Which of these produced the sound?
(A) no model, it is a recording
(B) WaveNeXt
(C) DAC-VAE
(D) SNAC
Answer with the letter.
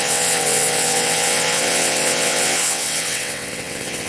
B